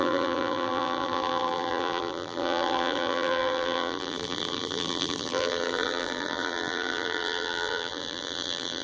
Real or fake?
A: fake